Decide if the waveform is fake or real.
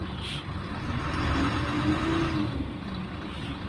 real